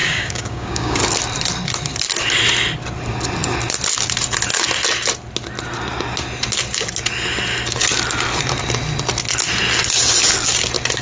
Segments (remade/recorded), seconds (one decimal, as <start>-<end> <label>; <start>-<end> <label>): 0.0-1.0 remade; 1.0-11.0 recorded